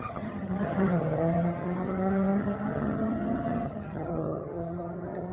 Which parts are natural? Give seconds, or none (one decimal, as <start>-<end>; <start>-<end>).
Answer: none